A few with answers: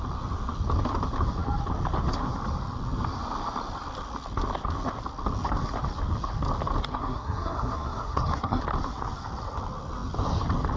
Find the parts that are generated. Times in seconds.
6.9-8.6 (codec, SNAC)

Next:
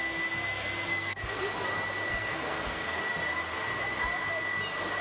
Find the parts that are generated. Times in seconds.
0.9-1.4 (codec, SNAC); 2.1-3.0

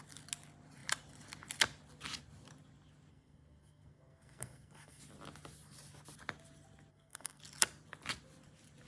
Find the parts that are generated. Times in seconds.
3.1-5.0 (codec, SNAC); 6.9-7.4

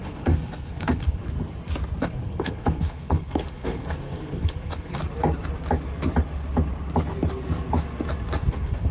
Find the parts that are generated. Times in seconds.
0.0-1.2 (codec, SNAC); 2.0-5.0; 8.5-8.9

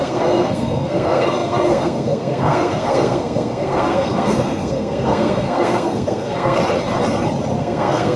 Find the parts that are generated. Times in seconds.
0.0-6.6 (codec, SNAC); 7.6-8.2

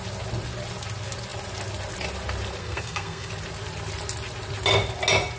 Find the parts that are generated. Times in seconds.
2.6-3.3 (codec, SNAC)

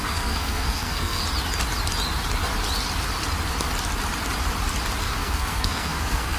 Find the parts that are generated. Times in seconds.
0.0-1.2 (codec, SNAC); 5.0-6.4